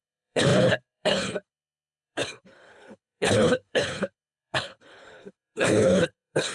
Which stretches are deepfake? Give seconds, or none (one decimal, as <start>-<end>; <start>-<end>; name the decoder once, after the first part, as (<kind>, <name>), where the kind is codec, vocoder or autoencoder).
0.0-6.5 (codec, HILCodec)